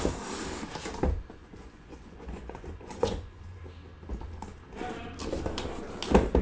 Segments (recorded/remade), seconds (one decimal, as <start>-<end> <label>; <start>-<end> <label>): 0.0-1.4 recorded; 1.4-3.6 remade; 3.6-6.4 recorded